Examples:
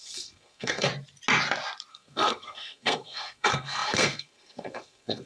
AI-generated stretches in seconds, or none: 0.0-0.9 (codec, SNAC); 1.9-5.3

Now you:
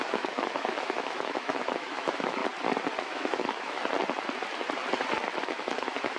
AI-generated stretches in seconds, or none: 0.0-2.4 (autoencoder, DAC-VAE); 3.0-3.8; 5.4-6.2

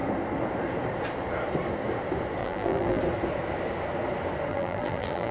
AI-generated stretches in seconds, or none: 2.4-3.0 (vocoder, BigVGAN v2); 4.5-5.3

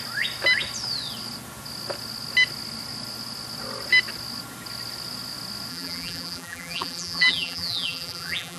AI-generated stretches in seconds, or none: 5.7-8.6 (vocoder, BigVGAN v2)

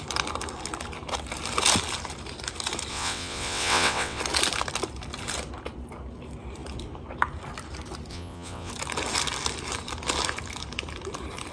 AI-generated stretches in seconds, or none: 2.9-4.2 (vocoder, WaveNeXt); 8.1-8.7